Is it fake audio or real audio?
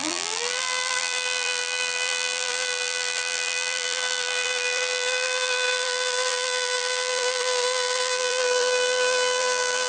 fake